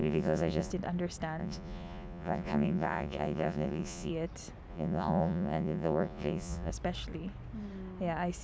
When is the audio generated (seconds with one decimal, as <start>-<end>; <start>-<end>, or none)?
0.0-0.7; 1.4-4.1; 4.7-6.7

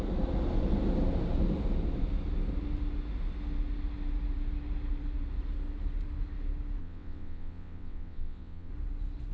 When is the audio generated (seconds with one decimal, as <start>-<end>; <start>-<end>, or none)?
6.8-8.7